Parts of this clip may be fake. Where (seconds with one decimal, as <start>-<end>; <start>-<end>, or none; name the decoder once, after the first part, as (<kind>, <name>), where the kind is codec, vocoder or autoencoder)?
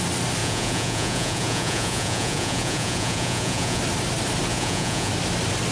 0.4-3.8 (vocoder, Vocos); 4.5-5.1